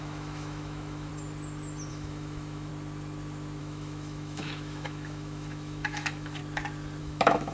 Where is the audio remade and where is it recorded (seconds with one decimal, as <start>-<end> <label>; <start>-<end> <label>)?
0.0-1.1 remade; 1.1-1.9 recorded; 1.9-2.7 remade; 2.7-3.6 recorded; 3.6-6.4 remade; 6.4-7.0 recorded; 7.0-7.5 remade